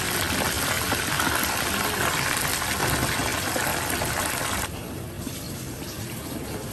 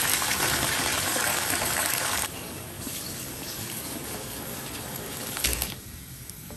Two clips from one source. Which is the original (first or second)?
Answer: first